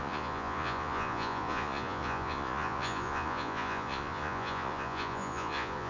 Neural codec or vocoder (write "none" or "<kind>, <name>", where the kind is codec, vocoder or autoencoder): vocoder, Vocos